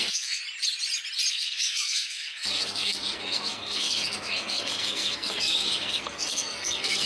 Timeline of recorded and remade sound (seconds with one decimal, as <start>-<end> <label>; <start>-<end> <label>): 0.0-0.4 remade; 0.4-1.3 recorded; 1.3-7.1 remade